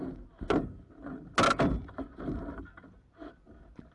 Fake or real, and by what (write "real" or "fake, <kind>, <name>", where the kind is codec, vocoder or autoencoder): real